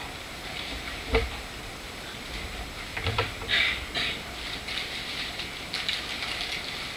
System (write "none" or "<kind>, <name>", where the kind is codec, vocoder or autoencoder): none